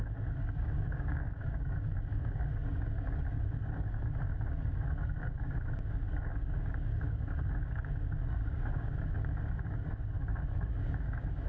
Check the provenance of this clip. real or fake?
fake